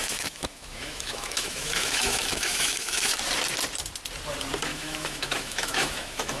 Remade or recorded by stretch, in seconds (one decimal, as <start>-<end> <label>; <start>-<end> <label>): 0.0-3.2 remade; 3.2-4.7 recorded; 4.7-6.4 remade

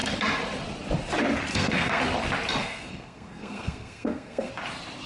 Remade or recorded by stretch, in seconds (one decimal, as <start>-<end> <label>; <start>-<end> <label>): 0.0-1.5 recorded; 1.5-2.0 remade; 2.0-2.6 recorded; 2.6-4.5 remade; 4.5-5.1 recorded

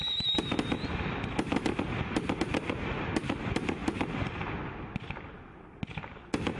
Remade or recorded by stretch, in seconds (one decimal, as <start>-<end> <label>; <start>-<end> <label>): 0.0-6.6 recorded

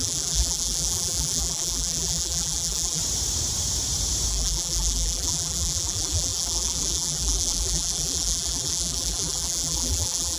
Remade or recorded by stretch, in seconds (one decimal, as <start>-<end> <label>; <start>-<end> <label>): 0.0-3.0 remade; 3.0-4.3 recorded; 4.3-10.4 remade

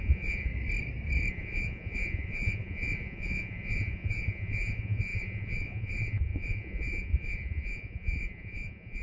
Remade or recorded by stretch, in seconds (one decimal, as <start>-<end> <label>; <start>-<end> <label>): 0.0-0.5 remade; 0.5-1.3 recorded; 1.3-9.0 remade

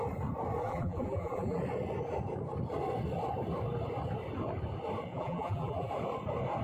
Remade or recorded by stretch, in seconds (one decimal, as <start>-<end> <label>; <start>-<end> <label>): 0.0-0.6 recorded; 0.6-1.6 remade; 1.6-5.1 recorded; 5.1-5.9 remade; 5.9-6.6 recorded